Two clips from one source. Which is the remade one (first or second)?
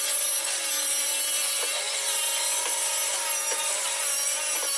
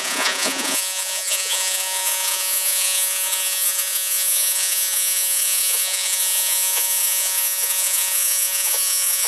second